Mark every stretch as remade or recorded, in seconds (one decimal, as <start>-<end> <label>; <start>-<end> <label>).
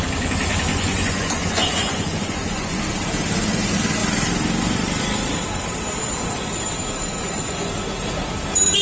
0.0-0.7 recorded; 0.7-2.8 remade; 2.8-7.2 recorded; 7.2-7.7 remade; 7.7-8.8 recorded